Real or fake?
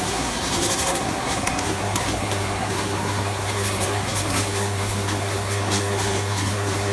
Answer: fake